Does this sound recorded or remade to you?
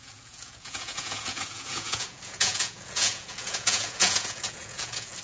remade